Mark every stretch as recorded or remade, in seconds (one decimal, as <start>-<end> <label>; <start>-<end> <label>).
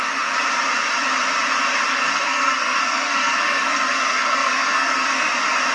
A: 0.0-1.9 recorded; 1.9-5.3 remade; 5.3-5.7 recorded